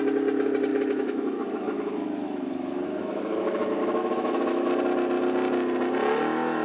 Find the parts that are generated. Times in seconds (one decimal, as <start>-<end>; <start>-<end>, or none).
0.7-4.7